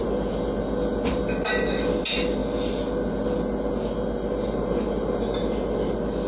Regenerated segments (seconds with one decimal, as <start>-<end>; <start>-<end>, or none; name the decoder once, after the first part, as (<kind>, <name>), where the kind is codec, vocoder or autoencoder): none